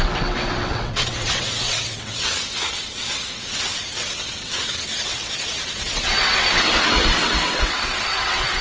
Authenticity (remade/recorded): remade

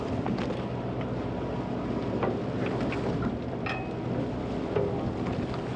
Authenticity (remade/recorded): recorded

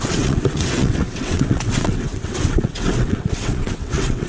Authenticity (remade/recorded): remade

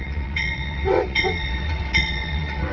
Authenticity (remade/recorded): remade